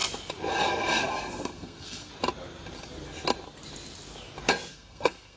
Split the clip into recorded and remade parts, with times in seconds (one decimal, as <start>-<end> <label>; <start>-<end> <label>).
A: 0.0-1.1 recorded; 1.1-2.1 remade; 2.1-4.7 recorded; 4.7-5.4 remade